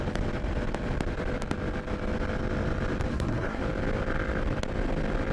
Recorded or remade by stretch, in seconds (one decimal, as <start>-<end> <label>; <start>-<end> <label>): 0.0-3.1 recorded; 3.1-3.6 remade; 3.6-5.3 recorded